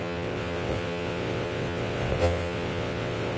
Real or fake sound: fake